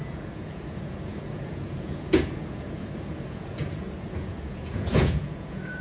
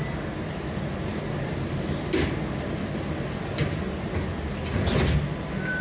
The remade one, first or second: first